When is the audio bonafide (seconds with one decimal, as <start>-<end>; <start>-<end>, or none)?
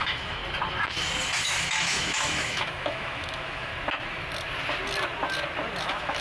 0.4-1.4; 3.7-5.8